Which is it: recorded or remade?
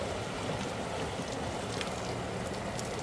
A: recorded